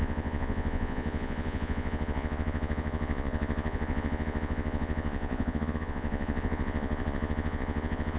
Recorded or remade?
remade